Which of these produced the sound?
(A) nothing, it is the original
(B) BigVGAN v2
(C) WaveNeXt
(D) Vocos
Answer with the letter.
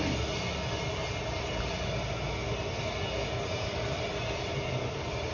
A